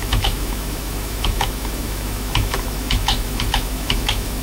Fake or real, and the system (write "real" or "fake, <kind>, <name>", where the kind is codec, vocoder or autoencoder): fake, autoencoder, DAC-VAE